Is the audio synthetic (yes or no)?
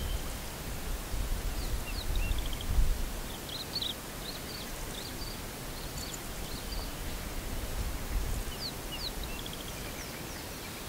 no